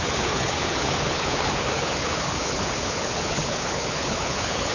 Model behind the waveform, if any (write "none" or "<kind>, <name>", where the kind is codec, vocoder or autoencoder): codec, HILCodec